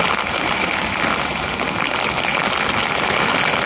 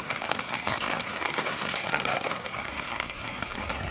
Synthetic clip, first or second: second